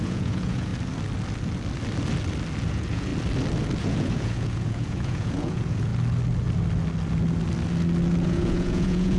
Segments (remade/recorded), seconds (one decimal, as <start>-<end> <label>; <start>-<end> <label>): 0.0-0.7 remade; 0.7-2.7 recorded; 2.7-3.1 remade; 3.1-3.8 recorded; 3.8-5.9 remade; 5.9-8.1 recorded; 8.1-9.2 remade